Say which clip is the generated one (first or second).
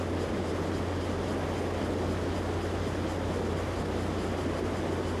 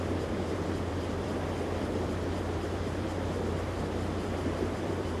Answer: second